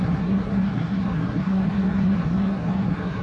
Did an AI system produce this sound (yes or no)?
yes